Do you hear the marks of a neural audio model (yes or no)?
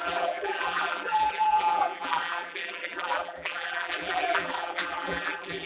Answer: yes